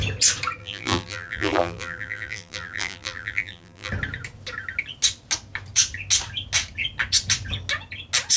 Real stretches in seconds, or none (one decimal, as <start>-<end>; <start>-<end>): 0.0-0.6; 3.9-8.4